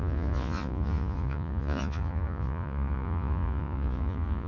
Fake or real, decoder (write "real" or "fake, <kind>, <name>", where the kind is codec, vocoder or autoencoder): fake, vocoder, Vocos